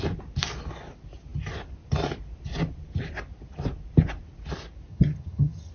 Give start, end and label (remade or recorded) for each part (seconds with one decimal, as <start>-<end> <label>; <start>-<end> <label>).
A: 0.0-4.9 recorded; 4.9-5.7 remade